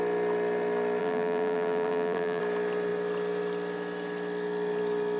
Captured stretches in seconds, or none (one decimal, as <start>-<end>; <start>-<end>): 0.0-1.0; 2.4-5.2